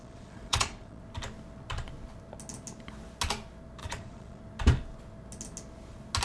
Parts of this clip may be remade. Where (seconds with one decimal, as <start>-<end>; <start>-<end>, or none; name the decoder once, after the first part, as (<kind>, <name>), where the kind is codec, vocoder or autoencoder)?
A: 0.0-1.0 (vocoder, Vocos); 3.8-4.4